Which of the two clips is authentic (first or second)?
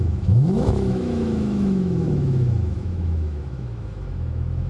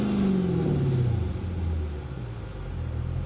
second